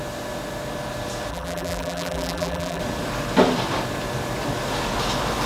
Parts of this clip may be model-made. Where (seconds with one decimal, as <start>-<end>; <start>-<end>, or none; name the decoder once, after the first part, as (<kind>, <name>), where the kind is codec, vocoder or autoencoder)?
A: 1.3-2.8 (vocoder, BigVGAN v2)